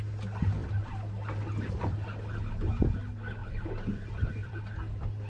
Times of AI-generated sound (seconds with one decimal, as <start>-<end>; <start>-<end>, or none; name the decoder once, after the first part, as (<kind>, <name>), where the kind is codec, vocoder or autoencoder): 3.4-4.6 (vocoder, BigVGAN v2)

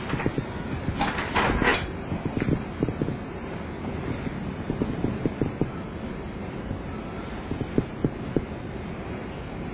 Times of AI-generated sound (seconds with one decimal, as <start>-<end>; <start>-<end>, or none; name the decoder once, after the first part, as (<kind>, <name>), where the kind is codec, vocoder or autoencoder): none

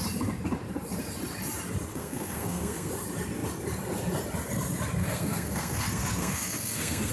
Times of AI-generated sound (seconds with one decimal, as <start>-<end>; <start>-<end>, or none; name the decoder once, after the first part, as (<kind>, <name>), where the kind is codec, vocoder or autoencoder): 1.9-2.9 (codec, SNAC); 5.0-7.1

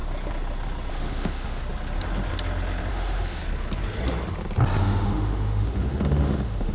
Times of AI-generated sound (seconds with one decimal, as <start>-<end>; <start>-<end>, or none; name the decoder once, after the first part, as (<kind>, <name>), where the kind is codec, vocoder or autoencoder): 0.9-1.6 (autoencoder, DAC-VAE); 2.9-3.4; 4.8-6.7

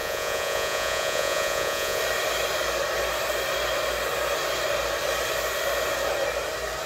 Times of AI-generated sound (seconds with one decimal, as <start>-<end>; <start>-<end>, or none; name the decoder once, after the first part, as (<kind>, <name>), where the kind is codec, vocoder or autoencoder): 0.0-2.0 (vocoder, Vocos)